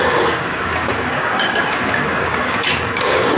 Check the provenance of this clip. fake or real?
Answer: fake